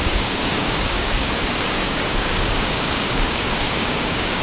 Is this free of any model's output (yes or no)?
no